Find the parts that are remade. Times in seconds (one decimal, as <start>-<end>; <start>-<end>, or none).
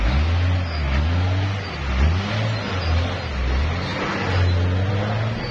none